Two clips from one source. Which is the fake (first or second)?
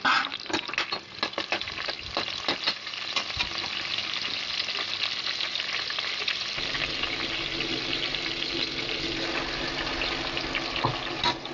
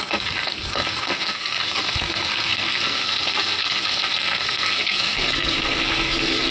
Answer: second